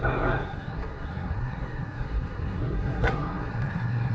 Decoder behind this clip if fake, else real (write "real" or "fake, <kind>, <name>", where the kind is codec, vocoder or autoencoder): fake, codec, SNAC